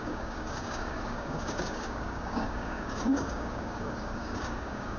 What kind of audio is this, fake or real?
fake